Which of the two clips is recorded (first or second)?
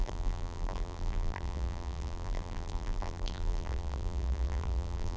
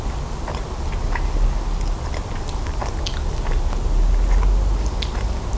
second